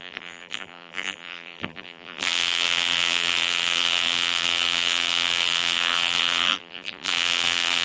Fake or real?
fake